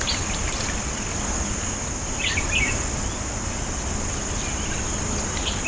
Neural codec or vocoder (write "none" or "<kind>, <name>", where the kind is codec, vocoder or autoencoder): none